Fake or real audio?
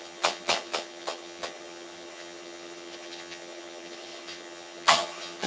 fake